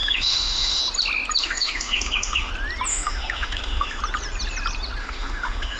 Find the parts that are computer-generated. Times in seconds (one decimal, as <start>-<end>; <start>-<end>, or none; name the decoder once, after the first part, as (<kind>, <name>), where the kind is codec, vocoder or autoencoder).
0.0-0.8 (autoencoder, DAC-VAE); 1.4-2.5; 2.9-4.0; 5.0-5.8

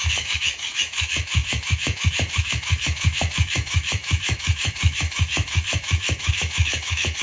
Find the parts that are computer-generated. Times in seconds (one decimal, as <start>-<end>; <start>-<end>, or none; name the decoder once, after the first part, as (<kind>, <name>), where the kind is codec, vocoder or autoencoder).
0.0-7.2 (autoencoder, DAC-VAE)

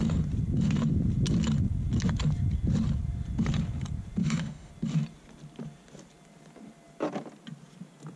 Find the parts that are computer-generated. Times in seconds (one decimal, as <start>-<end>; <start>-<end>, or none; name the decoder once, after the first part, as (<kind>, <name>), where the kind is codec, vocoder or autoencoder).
4.2-4.7 (autoencoder, DAC-VAE)